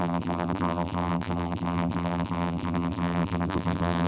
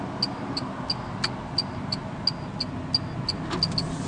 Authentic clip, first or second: second